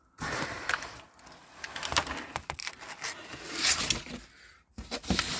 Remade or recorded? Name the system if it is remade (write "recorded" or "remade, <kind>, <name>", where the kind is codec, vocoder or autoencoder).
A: recorded